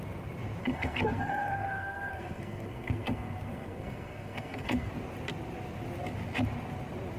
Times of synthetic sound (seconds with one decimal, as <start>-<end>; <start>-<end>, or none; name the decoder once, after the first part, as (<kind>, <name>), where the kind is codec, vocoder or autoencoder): 0.6-4.9 (codec, SNAC)